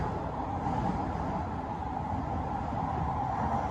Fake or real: real